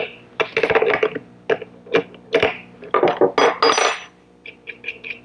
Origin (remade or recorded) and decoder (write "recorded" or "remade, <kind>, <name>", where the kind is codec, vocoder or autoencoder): recorded